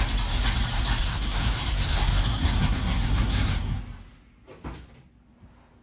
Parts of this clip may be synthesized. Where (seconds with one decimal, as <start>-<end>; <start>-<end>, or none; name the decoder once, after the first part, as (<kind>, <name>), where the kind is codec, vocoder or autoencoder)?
1.0-3.8 (codec, SNAC)

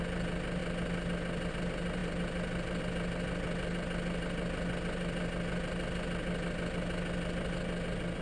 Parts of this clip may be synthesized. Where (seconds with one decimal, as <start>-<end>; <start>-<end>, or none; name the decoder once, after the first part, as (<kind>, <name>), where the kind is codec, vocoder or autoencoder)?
none

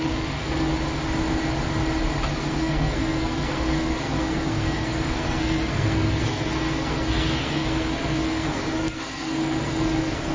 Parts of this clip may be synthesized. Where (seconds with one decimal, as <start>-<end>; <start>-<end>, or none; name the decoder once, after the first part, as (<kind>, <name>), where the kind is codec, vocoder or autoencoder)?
0.0-0.7 (codec, SNAC); 2.4-10.3

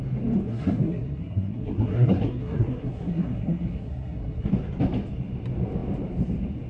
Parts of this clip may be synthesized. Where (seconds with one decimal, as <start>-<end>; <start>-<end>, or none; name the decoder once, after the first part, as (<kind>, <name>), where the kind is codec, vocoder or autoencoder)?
0.5-4.5 (codec, SNAC)

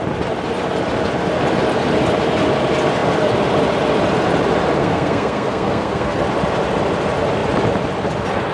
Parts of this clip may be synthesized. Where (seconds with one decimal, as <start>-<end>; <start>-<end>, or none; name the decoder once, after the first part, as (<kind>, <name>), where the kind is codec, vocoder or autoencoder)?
4.8-6.2 (codec, SNAC)

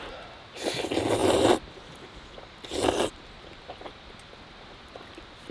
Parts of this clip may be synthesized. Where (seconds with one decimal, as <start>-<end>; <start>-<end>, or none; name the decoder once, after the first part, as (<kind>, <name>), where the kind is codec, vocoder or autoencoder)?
none

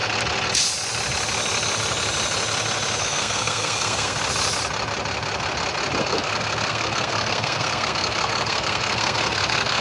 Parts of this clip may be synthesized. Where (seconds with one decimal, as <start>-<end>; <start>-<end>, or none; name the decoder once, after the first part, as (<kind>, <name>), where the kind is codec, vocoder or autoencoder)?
3.0-4.2 (codec, SNAC); 6.0-9.8

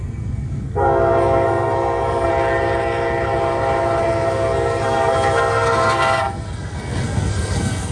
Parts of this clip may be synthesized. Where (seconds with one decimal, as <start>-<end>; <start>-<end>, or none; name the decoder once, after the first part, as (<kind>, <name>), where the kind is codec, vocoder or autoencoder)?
0.0-2.3 (codec, SNAC); 4.0-7.9